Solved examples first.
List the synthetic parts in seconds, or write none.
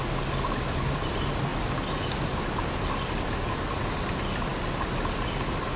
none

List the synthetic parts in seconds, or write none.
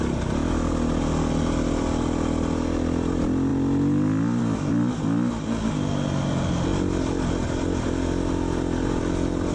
none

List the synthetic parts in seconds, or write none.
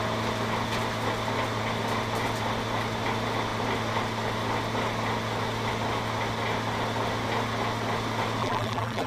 8.4-9.1 (vocoder, BigVGAN v2)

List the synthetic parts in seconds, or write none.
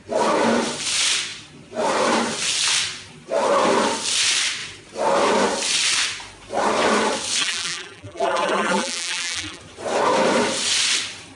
7.4-9.6 (vocoder, BigVGAN v2)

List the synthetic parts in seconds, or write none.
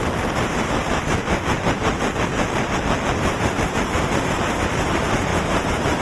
0.0-1.2 (vocoder, BigVGAN v2); 3.2-6.0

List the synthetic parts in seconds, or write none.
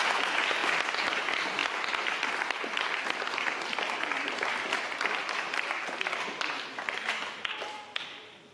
none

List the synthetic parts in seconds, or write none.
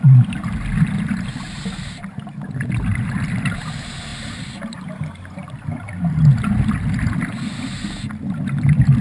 none